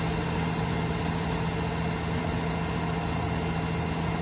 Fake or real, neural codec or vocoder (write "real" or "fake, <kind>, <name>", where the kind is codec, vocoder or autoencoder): real